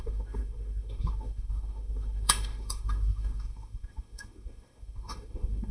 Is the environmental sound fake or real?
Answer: fake